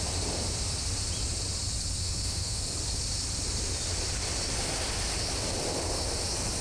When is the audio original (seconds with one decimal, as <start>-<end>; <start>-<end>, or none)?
0.0-2.0; 2.6-6.6